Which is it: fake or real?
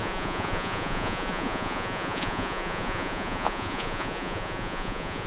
fake